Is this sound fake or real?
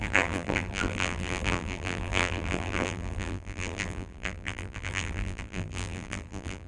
fake